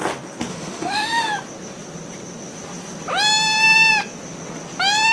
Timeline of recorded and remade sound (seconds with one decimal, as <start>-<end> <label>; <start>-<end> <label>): 0.0-0.5 recorded; 0.5-1.2 remade; 1.2-5.1 recorded